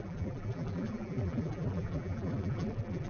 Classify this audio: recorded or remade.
remade